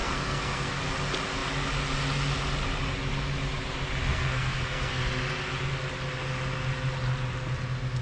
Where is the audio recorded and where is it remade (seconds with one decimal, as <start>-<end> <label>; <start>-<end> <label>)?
0.0-0.8 remade; 0.8-4.1 recorded; 4.1-5.0 remade; 5.0-8.0 recorded